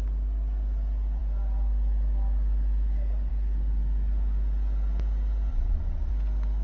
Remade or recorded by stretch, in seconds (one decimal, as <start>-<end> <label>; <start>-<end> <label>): 0.0-5.5 recorded; 5.5-6.1 remade; 6.1-6.6 recorded